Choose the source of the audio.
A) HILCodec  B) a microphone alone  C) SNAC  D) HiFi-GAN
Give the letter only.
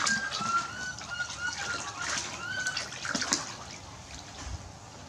B